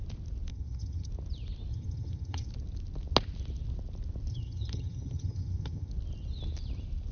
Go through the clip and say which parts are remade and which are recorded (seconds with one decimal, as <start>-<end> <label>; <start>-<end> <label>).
0.0-0.5 recorded; 0.5-1.1 remade; 1.1-1.7 recorded; 1.7-2.5 remade; 2.5-4.3 recorded; 4.3-5.9 remade; 5.9-7.1 recorded